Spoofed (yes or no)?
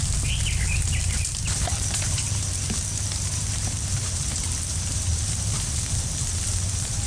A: yes